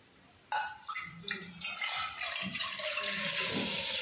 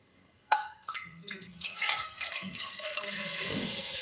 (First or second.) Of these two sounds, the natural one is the first